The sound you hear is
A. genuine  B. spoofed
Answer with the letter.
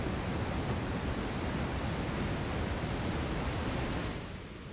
A